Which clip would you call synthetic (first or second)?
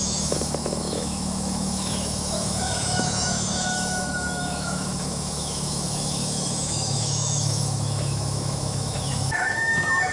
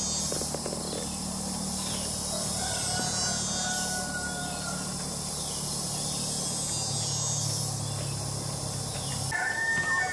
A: first